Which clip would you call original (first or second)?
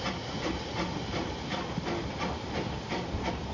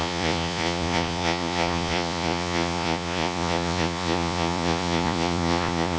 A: first